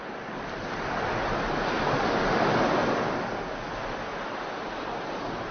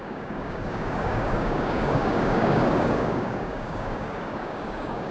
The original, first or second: first